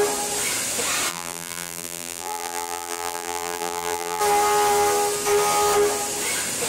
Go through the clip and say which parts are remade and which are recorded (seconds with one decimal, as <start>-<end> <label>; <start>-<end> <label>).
0.0-1.1 recorded; 1.1-4.2 remade; 4.2-6.7 recorded